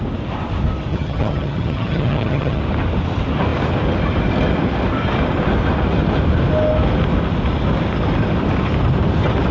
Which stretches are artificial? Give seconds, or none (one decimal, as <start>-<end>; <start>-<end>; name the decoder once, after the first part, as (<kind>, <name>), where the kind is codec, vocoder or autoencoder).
0.9-2.6 (vocoder, HiFi-GAN)